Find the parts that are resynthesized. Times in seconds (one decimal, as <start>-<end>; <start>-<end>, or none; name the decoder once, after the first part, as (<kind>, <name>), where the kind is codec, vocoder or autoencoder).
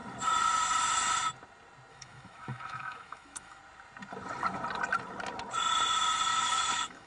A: 1.9-3.6 (autoencoder, DAC-VAE); 6.3-7.1